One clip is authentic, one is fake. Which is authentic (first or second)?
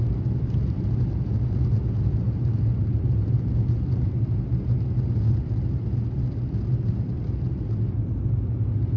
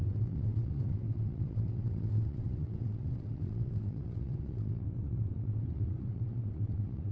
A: first